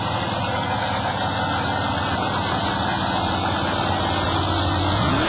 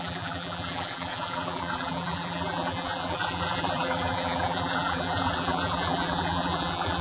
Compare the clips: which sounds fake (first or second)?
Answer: second